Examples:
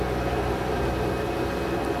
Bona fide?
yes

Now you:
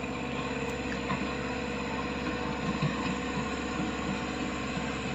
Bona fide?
yes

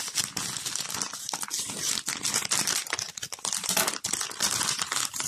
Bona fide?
yes